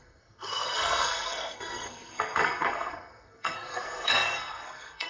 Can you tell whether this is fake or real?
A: fake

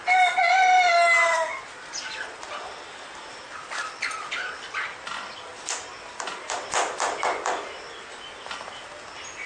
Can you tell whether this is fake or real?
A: real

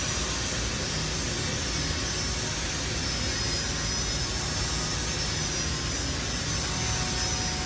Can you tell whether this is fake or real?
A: real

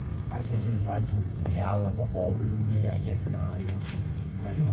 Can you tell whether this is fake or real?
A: fake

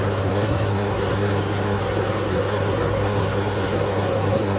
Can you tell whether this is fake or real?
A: fake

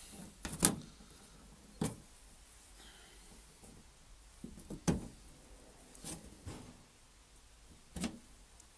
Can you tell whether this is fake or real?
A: real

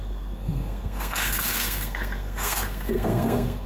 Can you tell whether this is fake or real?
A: fake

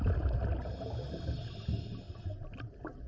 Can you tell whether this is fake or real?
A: real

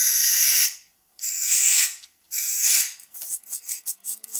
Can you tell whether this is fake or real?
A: fake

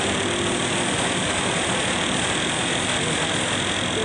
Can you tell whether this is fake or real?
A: real